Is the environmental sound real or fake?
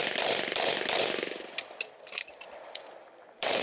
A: real